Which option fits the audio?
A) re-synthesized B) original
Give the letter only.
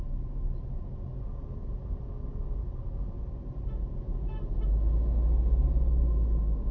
B